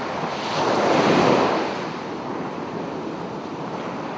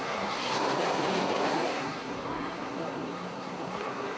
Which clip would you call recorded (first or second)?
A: first